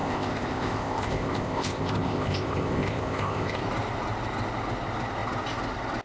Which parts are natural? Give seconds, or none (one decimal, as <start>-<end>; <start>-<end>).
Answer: 3.6-6.0